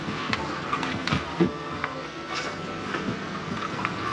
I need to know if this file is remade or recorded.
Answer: remade